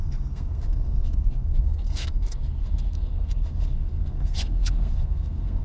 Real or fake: fake